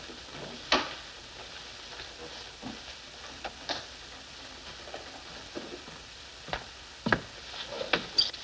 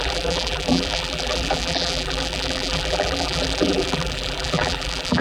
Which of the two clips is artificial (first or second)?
second